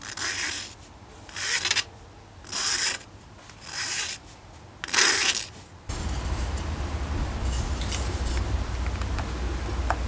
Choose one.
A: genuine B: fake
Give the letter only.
A